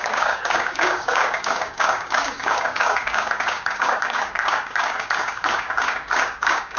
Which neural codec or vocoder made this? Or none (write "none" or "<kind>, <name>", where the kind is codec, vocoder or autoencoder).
codec, DAC